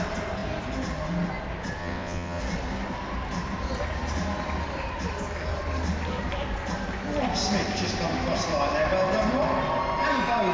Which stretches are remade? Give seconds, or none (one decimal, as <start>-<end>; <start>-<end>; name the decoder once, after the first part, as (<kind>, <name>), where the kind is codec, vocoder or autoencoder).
1.8-2.4 (vocoder, WaveNeXt)